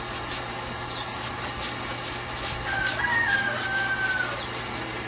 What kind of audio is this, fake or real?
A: real